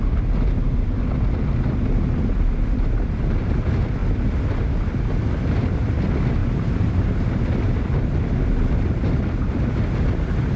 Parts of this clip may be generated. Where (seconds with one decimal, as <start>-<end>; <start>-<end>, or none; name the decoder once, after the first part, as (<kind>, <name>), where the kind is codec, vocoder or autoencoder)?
6.4-7.0 (vocoder, BigVGAN v2)